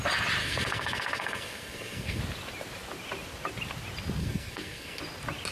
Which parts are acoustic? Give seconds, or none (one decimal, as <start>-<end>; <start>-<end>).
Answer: 0.0-0.4; 2.2-4.2; 5.0-5.5